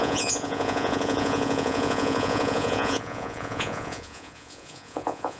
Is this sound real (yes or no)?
no